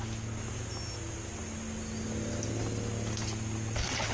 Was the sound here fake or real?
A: real